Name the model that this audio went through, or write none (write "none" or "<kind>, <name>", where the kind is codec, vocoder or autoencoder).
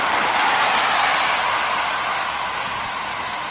vocoder, BigVGAN v2